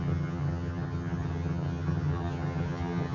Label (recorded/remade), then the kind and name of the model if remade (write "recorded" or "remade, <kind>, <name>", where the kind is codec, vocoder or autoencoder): remade, vocoder, HiFi-GAN